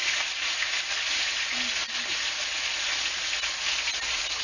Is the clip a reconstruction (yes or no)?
no